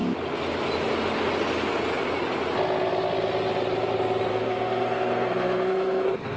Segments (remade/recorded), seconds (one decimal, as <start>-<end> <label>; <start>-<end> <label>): 0.0-4.3 recorded; 4.3-6.4 remade